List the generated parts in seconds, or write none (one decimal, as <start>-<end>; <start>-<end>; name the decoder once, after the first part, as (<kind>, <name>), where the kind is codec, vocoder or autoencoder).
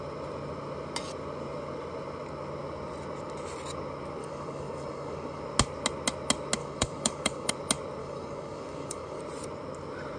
4.2-5.4 (codec, DAC); 6.6-7.5; 8.0-9.2